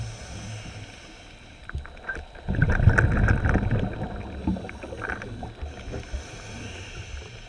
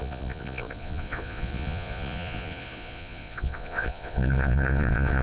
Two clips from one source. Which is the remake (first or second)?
second